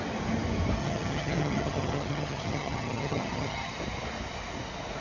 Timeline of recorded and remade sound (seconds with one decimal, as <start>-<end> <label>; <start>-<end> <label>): 0.0-0.8 recorded; 0.8-3.7 remade; 3.7-5.0 recorded